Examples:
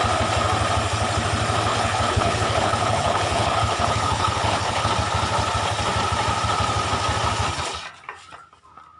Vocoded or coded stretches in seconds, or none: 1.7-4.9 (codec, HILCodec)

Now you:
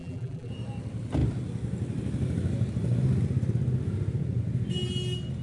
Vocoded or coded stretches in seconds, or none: 0.0-0.5 (vocoder, BigVGAN v2)

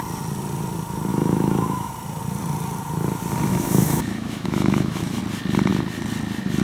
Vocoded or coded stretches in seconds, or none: 1.1-1.9 (autoencoder, DAC-VAE); 3.5-5.2

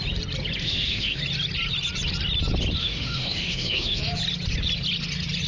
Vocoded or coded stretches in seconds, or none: 0.6-1.2 (autoencoder, DAC-VAE); 2.8-4.0

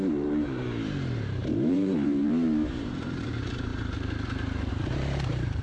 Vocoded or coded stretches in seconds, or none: 0.0-3.7 (vocoder, BigVGAN v2); 4.7-5.6